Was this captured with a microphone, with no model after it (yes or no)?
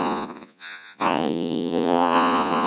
no